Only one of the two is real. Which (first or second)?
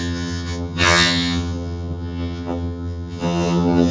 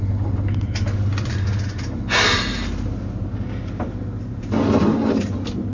second